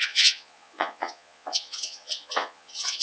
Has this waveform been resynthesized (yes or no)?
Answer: yes